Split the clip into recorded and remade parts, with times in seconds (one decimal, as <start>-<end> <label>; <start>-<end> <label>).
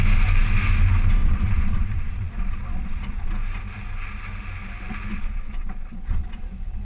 0.0-1.2 recorded; 1.2-3.3 remade; 3.3-5.1 recorded; 5.1-6.8 remade